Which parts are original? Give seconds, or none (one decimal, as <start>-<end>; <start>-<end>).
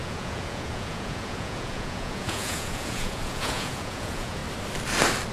4.4-5.3